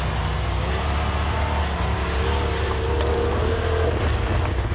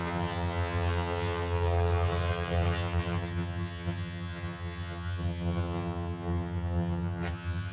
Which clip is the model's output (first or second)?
second